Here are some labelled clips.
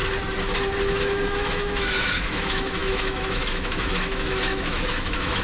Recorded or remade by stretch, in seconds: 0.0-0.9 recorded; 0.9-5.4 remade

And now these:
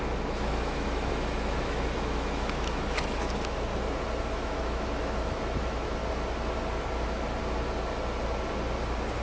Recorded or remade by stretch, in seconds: 0.0-3.7 remade; 3.7-4.2 recorded; 4.2-6.0 remade; 6.0-9.2 recorded

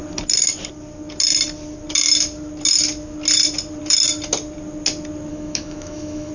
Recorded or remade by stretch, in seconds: 0.0-5.3 recorded; 5.3-6.3 remade